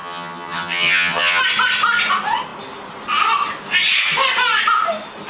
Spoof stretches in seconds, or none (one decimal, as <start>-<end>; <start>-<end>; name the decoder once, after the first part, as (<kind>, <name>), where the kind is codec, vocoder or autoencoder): 0.0-1.4 (vocoder, HiFi-GAN)